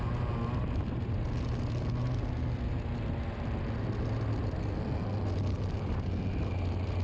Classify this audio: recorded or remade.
recorded